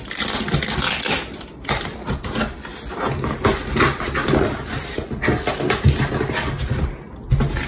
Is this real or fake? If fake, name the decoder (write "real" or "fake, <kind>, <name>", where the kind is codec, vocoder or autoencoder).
real